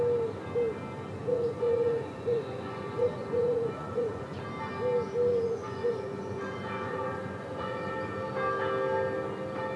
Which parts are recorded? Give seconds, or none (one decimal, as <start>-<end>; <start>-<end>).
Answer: 0.0-1.2; 4.4-5.3; 7.9-9.8